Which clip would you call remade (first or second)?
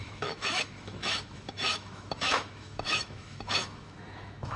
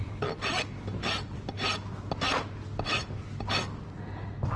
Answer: first